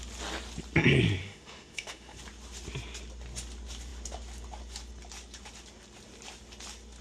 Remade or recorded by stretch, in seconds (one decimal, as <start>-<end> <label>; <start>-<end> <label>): 0.0-1.2 recorded; 1.2-2.2 remade; 2.2-7.0 recorded